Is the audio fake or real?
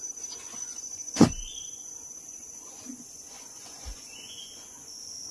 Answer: fake